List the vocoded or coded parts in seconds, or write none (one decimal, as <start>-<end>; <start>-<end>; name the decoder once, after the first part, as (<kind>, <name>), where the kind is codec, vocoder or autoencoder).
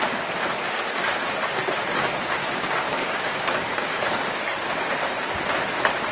2.4-4.9 (codec, DAC)